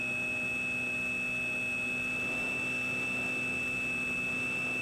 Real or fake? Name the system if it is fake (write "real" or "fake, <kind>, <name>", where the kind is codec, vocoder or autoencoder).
real